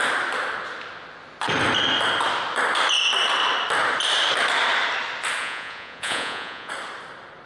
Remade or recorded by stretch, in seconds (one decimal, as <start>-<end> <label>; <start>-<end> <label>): 0.0-5.4 recorded; 5.4-6.7 remade; 6.7-7.5 recorded